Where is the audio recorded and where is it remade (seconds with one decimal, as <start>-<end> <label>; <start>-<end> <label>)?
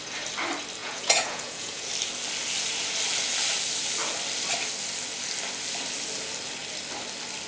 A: 0.0-0.8 recorded; 0.8-1.9 remade; 1.9-7.5 recorded